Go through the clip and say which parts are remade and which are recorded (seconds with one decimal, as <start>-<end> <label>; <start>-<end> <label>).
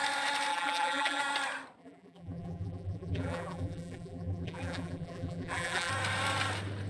0.0-0.5 recorded; 0.5-1.2 remade; 1.2-1.8 recorded; 1.8-5.9 remade; 5.9-6.9 recorded